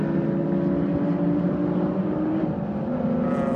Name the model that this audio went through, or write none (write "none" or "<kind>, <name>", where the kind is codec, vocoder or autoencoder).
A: none